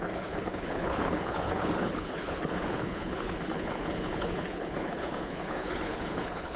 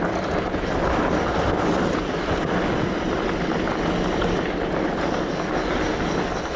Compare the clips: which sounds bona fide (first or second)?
second